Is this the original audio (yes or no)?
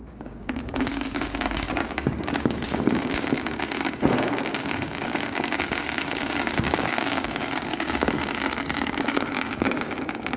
no